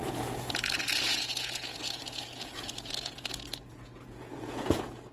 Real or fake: fake